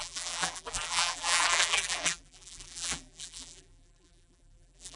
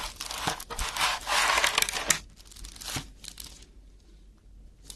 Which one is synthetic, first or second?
first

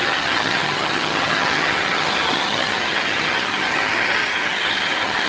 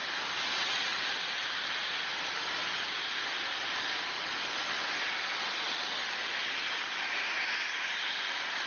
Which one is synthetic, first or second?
first